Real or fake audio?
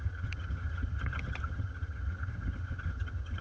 fake